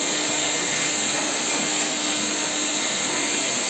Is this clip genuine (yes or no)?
no